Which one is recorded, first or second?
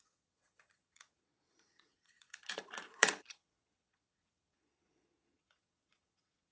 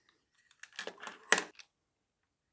second